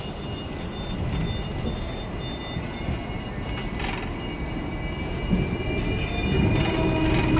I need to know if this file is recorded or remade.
recorded